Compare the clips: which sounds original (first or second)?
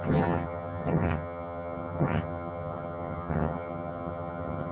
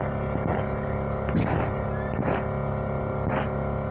second